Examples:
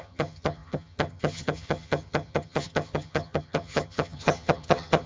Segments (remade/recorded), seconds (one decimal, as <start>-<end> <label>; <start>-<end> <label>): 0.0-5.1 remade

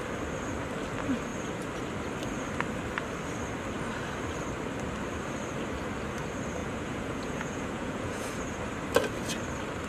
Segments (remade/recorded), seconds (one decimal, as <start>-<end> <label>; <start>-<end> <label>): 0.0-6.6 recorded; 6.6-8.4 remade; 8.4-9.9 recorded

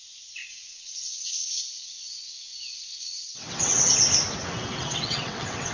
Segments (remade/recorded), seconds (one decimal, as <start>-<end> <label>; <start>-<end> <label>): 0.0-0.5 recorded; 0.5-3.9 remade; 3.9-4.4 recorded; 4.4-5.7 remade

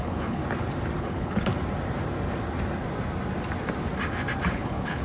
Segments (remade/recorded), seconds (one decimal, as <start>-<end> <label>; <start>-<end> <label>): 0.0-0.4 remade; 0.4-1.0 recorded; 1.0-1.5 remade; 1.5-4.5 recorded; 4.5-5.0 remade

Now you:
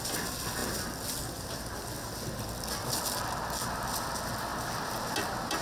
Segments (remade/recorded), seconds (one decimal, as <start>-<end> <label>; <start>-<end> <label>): 0.0-5.6 recorded

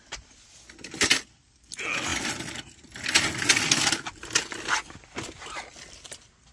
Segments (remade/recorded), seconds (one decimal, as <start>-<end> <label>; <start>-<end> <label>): 0.0-6.5 recorded

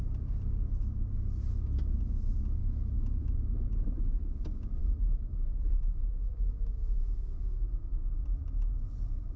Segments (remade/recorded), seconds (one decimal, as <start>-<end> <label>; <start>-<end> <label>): 0.0-2.6 recorded; 2.6-3.6 remade; 3.6-4.8 recorded; 4.8-8.1 remade; 8.1-9.4 recorded